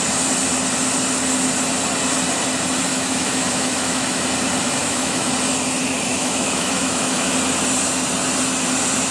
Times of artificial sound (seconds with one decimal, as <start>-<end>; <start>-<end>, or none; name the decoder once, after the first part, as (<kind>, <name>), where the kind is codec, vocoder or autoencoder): 2.9-4.2 (autoencoder, DAC-VAE); 4.8-5.3; 6.1-7.3

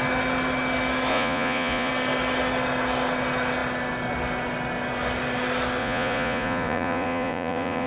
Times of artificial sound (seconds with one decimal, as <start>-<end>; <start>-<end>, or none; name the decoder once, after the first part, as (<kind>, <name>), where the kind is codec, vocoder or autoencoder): 1.1-1.9 (vocoder, Vocos); 5.8-7.9

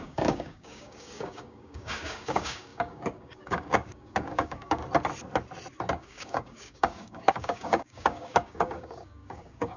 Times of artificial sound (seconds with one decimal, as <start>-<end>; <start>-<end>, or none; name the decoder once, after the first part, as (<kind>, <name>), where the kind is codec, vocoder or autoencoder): 0.0-4.8 (codec, DAC); 5.9-9.8

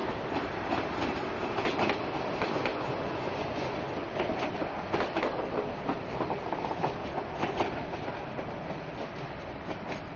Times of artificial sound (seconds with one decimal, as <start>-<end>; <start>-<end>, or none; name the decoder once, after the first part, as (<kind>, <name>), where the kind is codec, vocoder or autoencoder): 2.7-3.8 (vocoder, Vocos); 7.0-7.5